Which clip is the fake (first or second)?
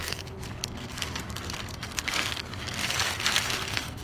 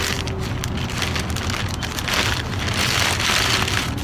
first